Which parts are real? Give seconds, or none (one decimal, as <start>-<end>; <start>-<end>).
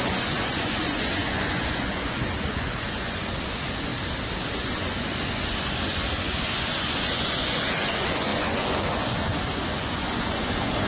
3.9-4.5